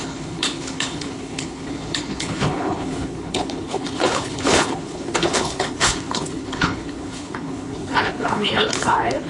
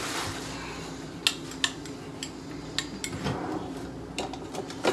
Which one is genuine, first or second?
second